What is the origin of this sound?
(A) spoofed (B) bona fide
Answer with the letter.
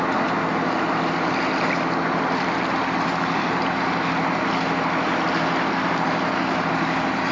B